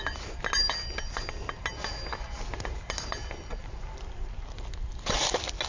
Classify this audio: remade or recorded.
recorded